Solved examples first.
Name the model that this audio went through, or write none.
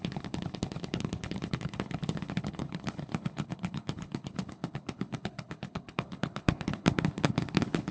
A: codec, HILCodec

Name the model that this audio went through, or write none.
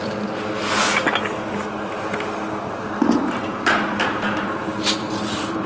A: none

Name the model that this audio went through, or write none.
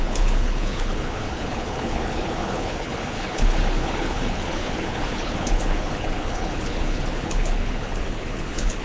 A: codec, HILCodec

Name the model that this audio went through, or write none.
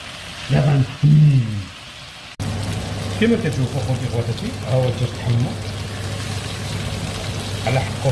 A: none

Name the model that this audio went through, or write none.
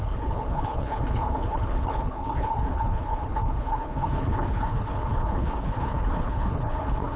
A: codec, HILCodec